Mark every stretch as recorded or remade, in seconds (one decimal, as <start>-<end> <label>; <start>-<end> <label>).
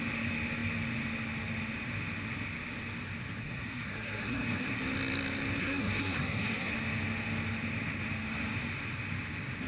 0.0-3.4 recorded; 3.4-4.8 remade; 4.8-5.6 recorded; 5.6-6.7 remade; 6.7-9.7 recorded